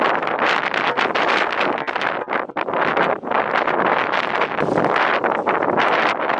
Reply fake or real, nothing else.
real